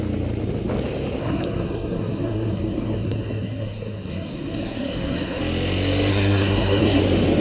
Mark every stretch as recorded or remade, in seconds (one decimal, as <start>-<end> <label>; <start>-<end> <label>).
0.0-1.2 recorded; 1.2-5.4 remade; 5.4-6.1 recorded; 6.1-7.0 remade; 7.0-7.4 recorded